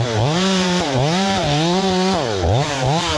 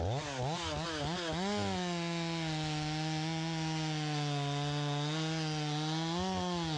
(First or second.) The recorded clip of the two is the second